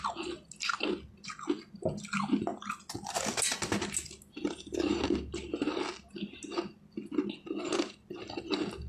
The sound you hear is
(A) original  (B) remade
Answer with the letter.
A